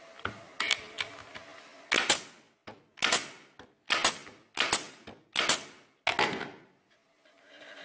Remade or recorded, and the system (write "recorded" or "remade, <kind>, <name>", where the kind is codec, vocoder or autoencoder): recorded